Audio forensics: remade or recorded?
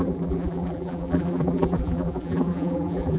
remade